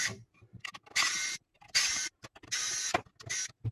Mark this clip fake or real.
real